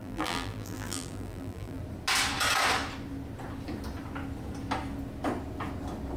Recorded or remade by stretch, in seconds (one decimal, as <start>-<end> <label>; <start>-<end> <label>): 0.0-1.8 remade; 1.8-6.2 recorded